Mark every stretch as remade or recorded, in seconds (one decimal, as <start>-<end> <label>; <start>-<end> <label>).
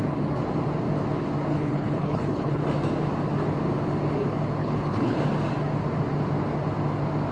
0.0-1.5 recorded; 1.5-2.6 remade; 2.6-4.6 recorded; 4.6-5.2 remade; 5.2-7.3 recorded